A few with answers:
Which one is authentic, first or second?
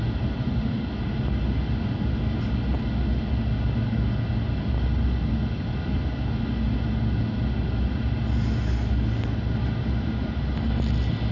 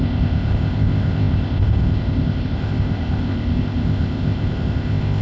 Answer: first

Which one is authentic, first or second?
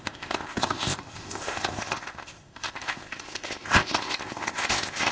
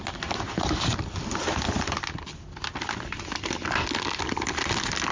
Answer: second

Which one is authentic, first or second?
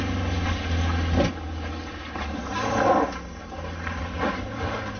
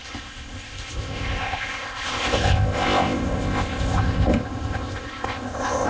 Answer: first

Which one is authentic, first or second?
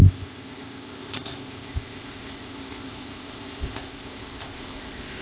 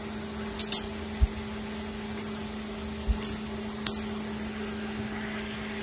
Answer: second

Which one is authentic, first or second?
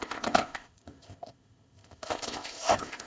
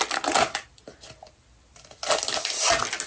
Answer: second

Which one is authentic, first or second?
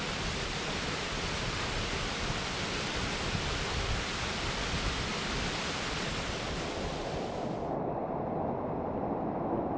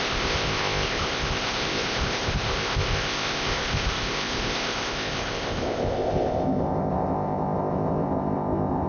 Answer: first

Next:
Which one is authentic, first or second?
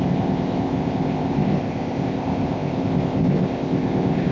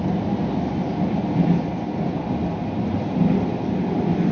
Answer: second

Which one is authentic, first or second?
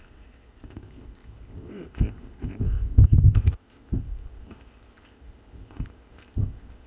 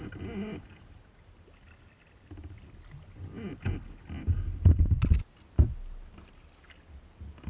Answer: second